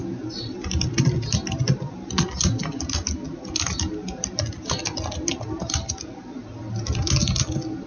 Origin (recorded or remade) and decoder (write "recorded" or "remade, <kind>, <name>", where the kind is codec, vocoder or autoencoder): recorded